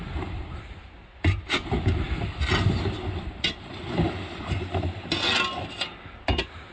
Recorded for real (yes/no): yes